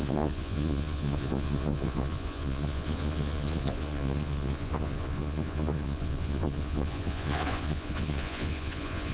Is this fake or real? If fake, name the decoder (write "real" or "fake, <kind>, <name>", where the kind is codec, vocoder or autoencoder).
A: fake, vocoder, Vocos